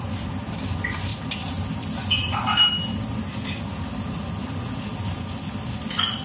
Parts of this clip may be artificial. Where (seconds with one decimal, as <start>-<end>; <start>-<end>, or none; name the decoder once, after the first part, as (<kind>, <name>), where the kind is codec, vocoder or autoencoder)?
none